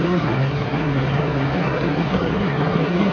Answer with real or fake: fake